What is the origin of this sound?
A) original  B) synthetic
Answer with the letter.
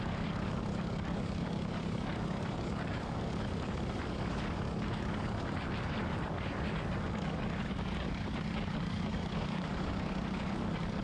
B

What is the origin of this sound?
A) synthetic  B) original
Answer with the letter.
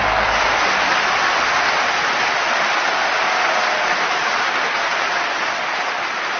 B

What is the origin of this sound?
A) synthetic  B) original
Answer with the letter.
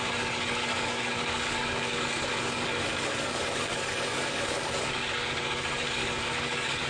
A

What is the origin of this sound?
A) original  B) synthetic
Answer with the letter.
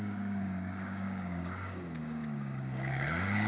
B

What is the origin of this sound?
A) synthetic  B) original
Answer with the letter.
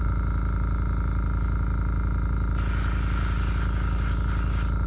B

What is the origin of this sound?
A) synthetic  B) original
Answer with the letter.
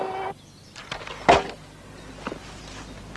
B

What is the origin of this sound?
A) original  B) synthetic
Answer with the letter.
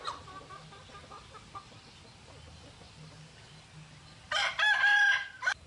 A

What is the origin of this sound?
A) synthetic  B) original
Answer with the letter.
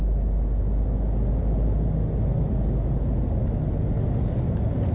B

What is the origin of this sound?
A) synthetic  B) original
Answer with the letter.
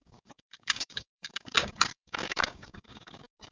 A